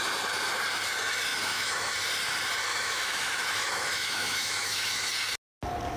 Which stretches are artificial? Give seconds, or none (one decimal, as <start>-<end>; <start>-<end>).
1.3-1.9; 2.7-5.1